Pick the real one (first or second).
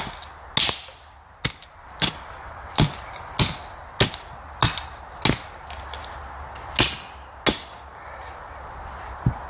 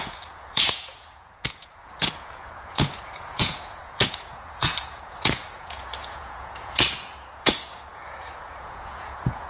first